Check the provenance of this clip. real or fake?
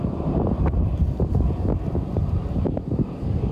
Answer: fake